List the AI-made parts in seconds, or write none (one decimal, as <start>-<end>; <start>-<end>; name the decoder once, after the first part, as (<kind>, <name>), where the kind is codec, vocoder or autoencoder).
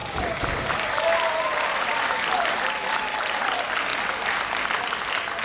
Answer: 0.0-3.2 (vocoder, BigVGAN v2)